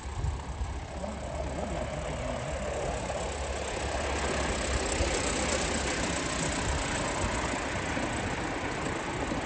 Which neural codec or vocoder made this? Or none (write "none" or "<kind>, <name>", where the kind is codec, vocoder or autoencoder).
none